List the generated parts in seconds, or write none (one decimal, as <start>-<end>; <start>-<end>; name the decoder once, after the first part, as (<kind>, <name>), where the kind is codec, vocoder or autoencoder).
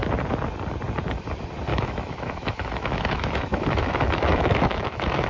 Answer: 1.7-5.3 (autoencoder, DAC-VAE)